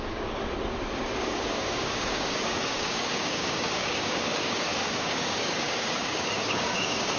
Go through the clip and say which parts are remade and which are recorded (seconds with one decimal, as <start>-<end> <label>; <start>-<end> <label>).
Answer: 0.0-0.4 remade; 0.4-1.2 recorded; 1.2-7.2 remade